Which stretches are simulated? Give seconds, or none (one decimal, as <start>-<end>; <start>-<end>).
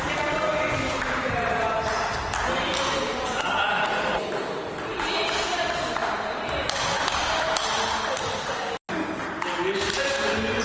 none